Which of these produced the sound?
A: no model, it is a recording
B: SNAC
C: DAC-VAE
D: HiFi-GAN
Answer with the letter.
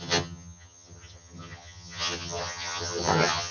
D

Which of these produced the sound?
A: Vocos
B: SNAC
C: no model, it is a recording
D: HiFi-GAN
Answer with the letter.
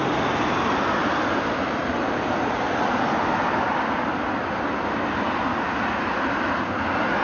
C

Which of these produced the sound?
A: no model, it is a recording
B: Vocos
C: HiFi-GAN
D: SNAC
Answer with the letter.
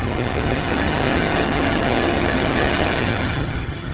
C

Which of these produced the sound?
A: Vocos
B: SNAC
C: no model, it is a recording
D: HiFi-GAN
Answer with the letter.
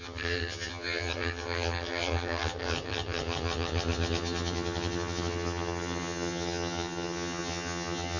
D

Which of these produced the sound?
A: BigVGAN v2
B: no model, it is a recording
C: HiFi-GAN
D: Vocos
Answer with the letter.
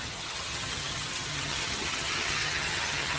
C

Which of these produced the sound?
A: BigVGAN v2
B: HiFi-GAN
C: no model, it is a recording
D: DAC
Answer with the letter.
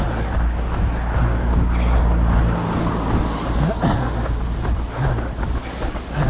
C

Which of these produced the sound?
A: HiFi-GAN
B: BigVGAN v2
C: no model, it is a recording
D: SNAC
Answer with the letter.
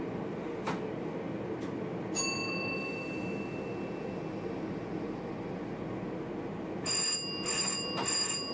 C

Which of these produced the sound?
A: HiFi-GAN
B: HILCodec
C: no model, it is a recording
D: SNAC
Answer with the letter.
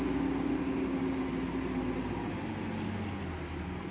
C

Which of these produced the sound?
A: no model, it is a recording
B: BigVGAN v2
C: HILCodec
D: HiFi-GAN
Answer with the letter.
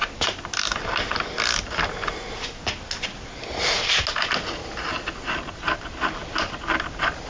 A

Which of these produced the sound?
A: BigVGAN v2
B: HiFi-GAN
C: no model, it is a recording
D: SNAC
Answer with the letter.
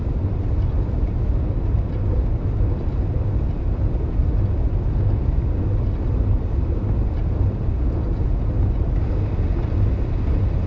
C